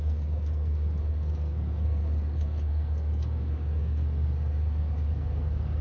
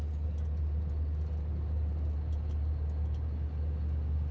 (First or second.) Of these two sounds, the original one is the second